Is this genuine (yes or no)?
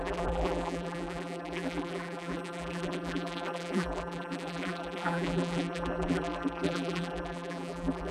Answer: no